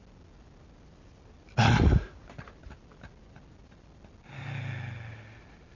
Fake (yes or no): no